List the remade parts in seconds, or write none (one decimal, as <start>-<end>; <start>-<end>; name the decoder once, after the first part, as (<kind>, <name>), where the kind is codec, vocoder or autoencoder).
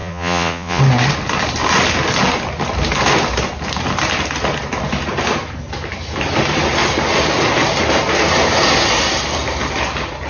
0.0-0.8 (vocoder, Vocos)